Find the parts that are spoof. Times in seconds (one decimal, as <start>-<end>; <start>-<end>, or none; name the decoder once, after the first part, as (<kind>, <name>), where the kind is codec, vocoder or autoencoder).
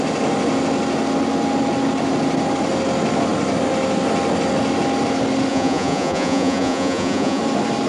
5.5-7.4 (vocoder, Vocos)